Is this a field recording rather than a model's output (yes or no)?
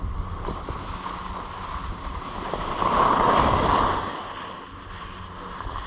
yes